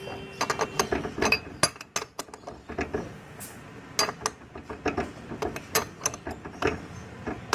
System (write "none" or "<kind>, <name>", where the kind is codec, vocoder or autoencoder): none